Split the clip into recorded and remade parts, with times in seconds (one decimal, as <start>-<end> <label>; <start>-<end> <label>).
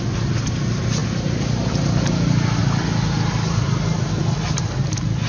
0.0-5.3 recorded